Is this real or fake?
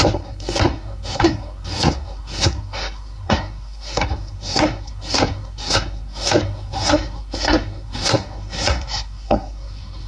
fake